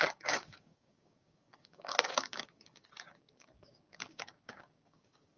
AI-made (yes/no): yes